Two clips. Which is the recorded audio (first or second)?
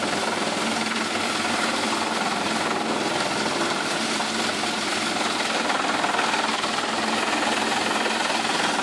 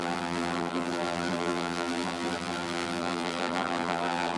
first